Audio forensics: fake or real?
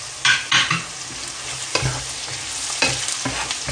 real